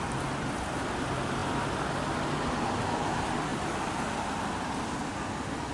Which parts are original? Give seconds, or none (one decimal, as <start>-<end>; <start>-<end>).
0.0-5.7